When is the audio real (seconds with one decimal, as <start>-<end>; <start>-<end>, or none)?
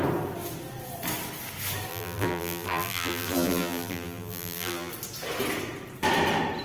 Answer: 0.0-1.9; 4.9-6.6